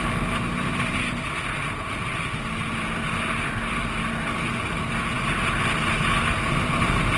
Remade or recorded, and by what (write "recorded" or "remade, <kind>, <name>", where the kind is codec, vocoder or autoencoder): recorded